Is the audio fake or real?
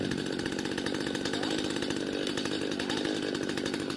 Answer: real